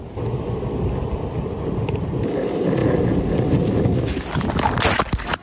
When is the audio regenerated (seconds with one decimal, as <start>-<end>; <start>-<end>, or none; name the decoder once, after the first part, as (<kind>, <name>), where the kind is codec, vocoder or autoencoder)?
none